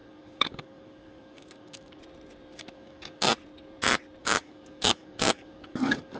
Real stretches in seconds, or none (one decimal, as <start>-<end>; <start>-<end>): 2.0-2.5; 3.3-4.2

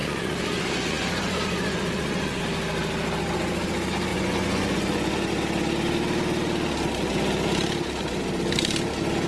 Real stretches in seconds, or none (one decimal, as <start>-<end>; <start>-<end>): 2.4-4.1; 5.3-9.3

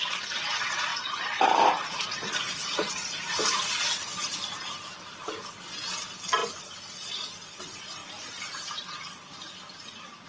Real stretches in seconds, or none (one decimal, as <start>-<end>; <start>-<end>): 0.0-0.9; 5.5-8.0; 8.8-10.3

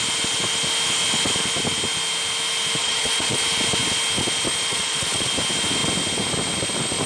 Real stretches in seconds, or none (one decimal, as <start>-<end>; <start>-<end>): 0.0-2.8; 3.4-4.7; 5.3-7.1

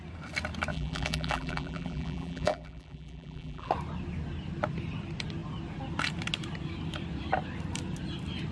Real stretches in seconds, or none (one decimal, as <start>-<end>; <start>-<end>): 0.0-0.7; 3.7-8.5

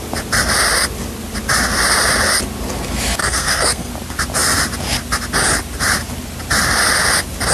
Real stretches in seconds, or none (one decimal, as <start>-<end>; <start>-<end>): 0.0-3.2; 3.9-7.5

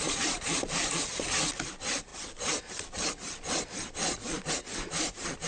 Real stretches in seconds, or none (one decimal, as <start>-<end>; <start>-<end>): 0.9-5.5